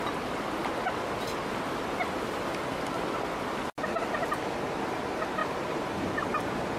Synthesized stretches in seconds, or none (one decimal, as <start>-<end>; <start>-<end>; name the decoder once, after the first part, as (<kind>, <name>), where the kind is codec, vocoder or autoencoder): 5.4-6.1 (vocoder, BigVGAN v2)